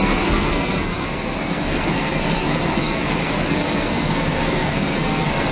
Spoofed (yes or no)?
yes